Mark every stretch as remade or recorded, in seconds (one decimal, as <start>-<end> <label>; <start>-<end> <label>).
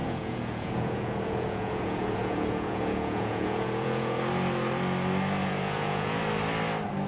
0.0-4.2 remade; 4.2-5.4 recorded; 5.4-6.2 remade; 6.2-7.1 recorded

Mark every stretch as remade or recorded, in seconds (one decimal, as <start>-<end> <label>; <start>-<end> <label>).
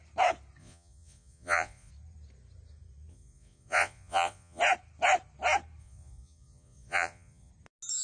0.0-0.6 recorded; 0.6-1.9 remade; 1.9-3.1 recorded; 3.1-4.6 remade; 4.6-5.8 recorded; 5.8-7.5 remade; 7.5-8.0 recorded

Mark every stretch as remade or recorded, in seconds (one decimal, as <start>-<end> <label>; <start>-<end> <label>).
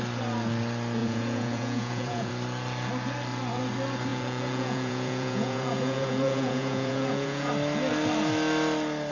0.0-1.0 recorded; 1.0-2.3 remade; 2.3-4.1 recorded; 4.1-7.5 remade; 7.5-9.1 recorded